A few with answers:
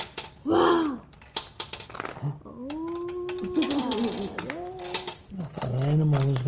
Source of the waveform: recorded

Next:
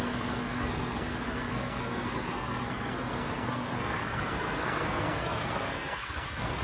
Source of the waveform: remade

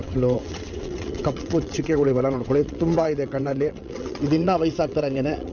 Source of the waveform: remade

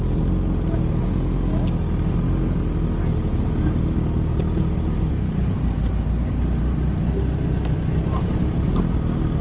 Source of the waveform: recorded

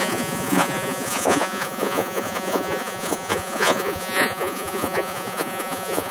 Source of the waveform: remade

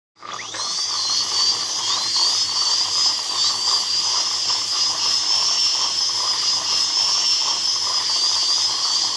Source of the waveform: recorded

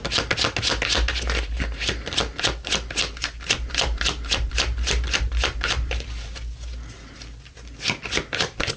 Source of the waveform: recorded